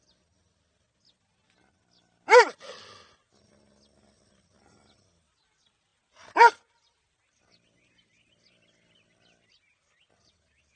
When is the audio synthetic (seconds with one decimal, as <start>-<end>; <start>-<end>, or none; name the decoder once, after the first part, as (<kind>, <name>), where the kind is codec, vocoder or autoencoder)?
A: none